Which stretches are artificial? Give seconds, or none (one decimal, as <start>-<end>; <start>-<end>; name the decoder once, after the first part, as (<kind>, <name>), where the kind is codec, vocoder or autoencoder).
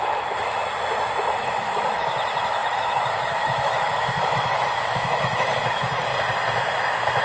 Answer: 0.0-0.6 (autoencoder, DAC-VAE); 1.3-6.1